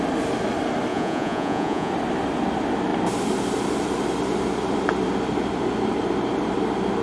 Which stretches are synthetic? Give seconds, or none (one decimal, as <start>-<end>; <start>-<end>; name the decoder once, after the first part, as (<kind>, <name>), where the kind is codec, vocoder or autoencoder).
0.9-1.9 (vocoder, Vocos)